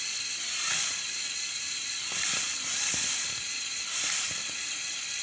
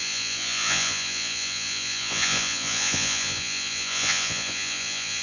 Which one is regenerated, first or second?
second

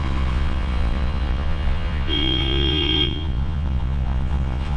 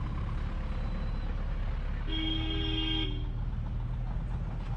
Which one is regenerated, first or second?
first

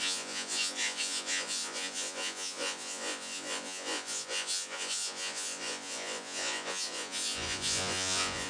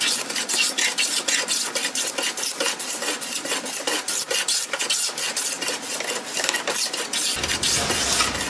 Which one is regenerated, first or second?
first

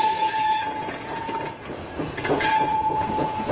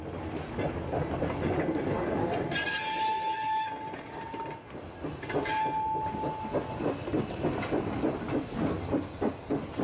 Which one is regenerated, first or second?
first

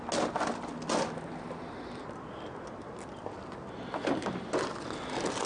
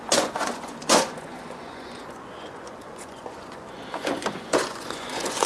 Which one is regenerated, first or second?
second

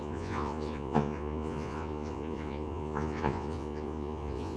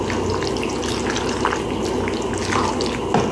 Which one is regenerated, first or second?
first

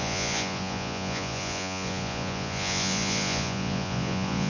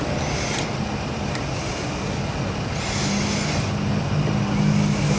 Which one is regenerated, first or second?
first